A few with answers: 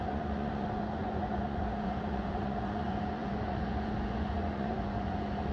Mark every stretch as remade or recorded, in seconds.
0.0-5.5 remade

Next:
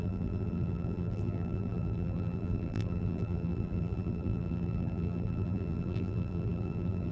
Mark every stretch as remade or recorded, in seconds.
0.0-7.1 remade

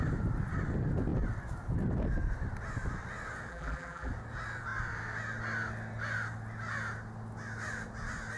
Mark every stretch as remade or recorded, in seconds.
0.0-3.5 recorded; 3.5-4.1 remade; 4.1-8.4 recorded

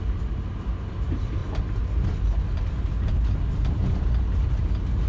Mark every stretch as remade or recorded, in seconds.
0.0-5.1 recorded

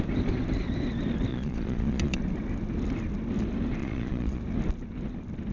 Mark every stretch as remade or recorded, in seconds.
0.0-1.3 recorded; 1.3-2.2 remade; 2.2-3.8 recorded; 3.8-4.4 remade; 4.4-5.5 recorded

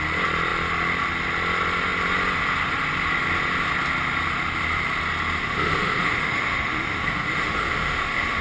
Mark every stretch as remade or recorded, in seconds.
0.0-5.4 recorded; 5.4-8.4 remade

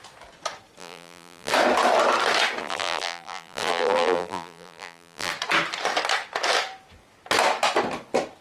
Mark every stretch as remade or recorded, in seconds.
0.0-0.8 recorded; 0.8-1.5 remade; 1.5-2.6 recorded; 2.6-5.3 remade; 5.3-8.4 recorded

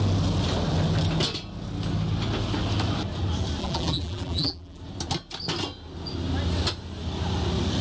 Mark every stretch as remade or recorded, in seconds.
0.0-3.6 recorded; 3.6-4.8 remade; 4.8-7.8 recorded